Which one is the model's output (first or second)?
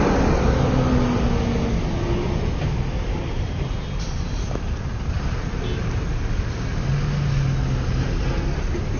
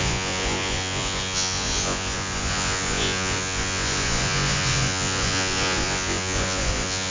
second